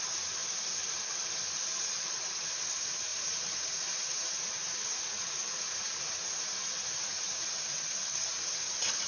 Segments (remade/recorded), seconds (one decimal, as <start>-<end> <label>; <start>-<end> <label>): 0.0-0.4 remade; 0.4-2.1 recorded; 2.1-9.1 remade